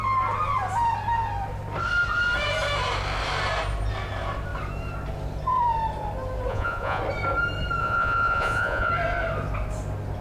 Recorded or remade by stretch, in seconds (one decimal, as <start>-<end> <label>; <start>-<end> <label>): 0.0-6.5 recorded; 6.5-7.0 remade; 7.0-7.8 recorded; 7.8-8.9 remade; 8.9-10.2 recorded

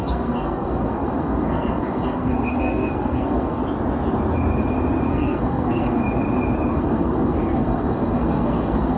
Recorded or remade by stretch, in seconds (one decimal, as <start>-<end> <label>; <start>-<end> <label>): 0.0-3.6 remade; 3.6-5.1 recorded; 5.1-6.0 remade; 6.0-6.7 recorded; 6.7-9.0 remade